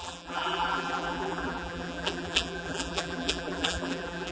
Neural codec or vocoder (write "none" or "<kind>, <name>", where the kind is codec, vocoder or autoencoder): vocoder, BigVGAN v2